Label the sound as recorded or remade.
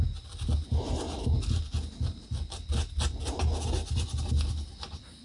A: recorded